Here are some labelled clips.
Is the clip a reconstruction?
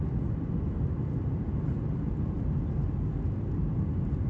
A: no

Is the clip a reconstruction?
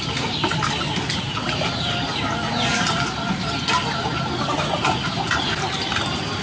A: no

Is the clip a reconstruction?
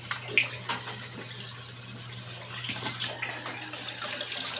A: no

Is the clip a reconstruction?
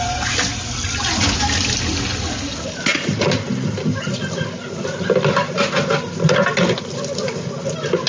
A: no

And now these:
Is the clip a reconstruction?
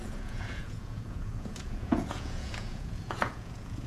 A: yes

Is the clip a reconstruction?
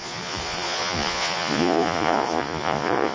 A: yes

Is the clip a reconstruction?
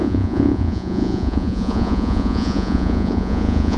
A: yes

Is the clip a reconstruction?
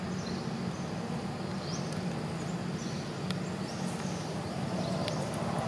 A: no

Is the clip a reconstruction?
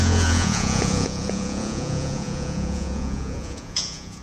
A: yes